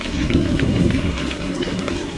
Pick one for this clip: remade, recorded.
remade